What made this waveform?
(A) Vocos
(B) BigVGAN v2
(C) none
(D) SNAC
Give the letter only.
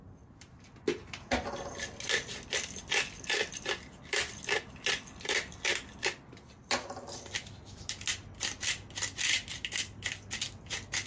C